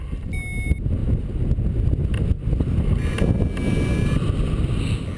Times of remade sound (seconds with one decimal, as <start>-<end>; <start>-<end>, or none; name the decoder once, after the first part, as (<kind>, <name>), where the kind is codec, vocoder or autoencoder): none